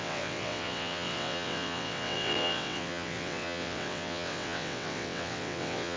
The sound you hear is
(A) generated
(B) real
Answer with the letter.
A